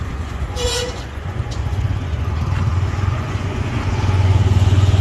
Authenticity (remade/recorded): remade